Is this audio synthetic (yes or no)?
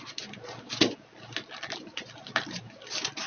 no